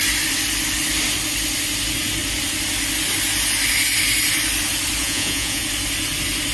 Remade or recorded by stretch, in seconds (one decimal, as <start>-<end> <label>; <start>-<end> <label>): 0.0-5.0 recorded; 5.0-5.6 remade; 5.6-6.5 recorded